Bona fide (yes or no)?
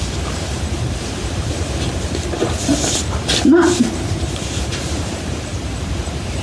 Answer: no